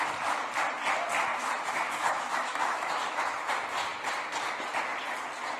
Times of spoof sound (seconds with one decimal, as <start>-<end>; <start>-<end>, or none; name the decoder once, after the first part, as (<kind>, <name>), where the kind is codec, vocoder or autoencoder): 1.3-3.5 (autoencoder, DAC-VAE)